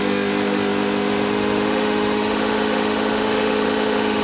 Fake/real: fake